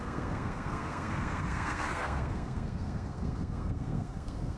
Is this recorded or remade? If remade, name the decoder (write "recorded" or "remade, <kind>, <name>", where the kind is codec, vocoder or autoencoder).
remade, codec, SNAC